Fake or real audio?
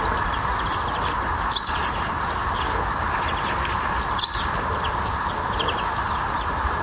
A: real